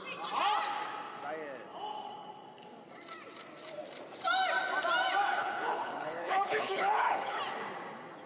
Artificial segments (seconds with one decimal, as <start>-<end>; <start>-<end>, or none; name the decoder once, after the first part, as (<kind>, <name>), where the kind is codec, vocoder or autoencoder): 5.4-7.4 (codec, HILCodec)